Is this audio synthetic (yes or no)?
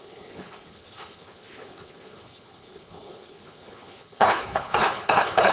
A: yes